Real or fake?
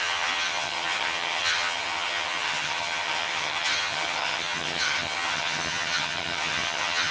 fake